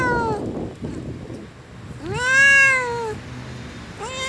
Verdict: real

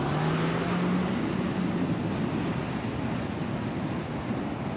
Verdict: real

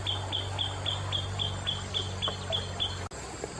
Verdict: real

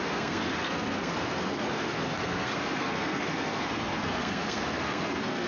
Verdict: fake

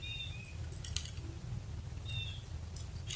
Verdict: real